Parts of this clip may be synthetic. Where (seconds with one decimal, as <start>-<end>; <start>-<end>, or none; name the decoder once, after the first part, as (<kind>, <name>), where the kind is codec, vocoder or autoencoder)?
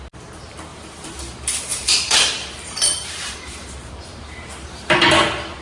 0.7-1.2 (vocoder, BigVGAN v2); 1.7-5.1